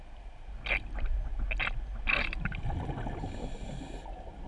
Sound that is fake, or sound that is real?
real